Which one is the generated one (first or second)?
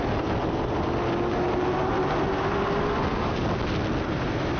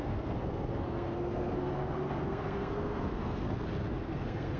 second